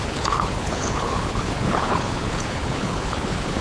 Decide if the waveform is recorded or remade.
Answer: remade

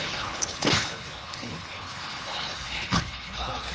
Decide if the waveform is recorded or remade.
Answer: remade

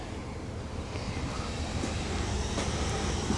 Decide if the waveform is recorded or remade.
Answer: recorded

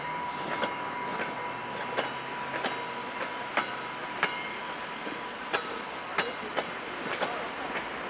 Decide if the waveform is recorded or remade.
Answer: recorded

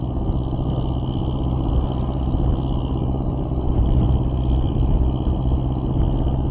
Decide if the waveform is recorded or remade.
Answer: recorded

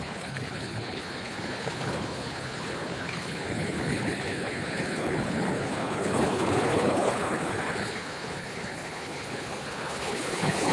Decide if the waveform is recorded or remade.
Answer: remade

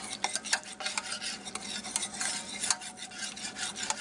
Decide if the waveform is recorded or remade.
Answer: recorded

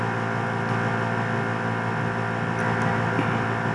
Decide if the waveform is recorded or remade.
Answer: recorded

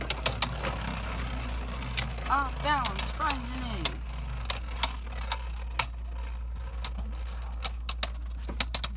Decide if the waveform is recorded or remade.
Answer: recorded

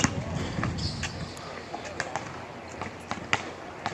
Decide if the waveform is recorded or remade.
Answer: recorded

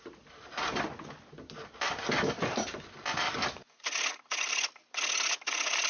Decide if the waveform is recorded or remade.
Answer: recorded